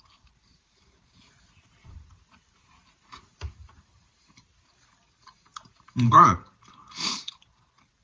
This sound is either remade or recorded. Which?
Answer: remade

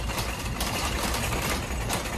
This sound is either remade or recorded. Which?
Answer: remade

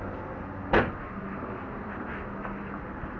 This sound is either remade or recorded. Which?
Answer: recorded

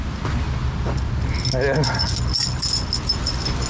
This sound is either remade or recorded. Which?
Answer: recorded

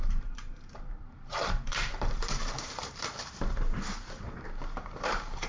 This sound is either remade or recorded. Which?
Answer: remade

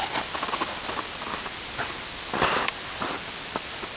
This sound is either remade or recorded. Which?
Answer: recorded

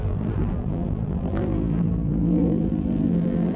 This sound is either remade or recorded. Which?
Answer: remade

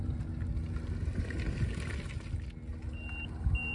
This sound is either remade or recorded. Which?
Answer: recorded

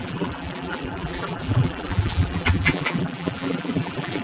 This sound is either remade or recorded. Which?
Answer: remade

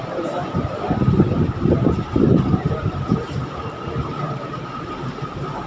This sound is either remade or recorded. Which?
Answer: remade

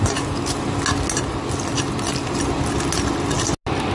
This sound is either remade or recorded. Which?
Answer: recorded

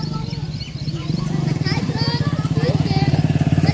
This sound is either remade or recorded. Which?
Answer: remade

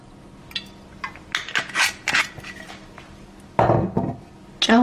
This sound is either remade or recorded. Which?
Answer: recorded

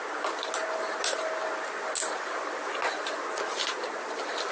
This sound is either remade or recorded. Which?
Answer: recorded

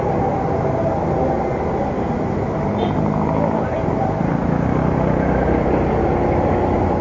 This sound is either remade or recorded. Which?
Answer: recorded